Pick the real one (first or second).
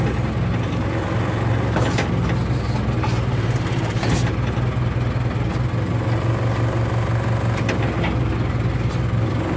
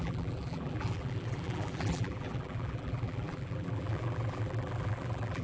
first